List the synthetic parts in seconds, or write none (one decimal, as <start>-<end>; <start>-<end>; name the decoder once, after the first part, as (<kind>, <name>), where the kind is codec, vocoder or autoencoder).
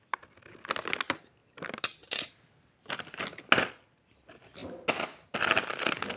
none